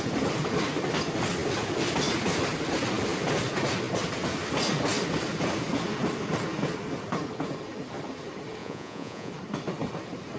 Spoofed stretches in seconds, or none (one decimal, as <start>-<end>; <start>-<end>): 8.6-9.3